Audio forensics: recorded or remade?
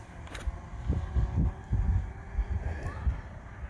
recorded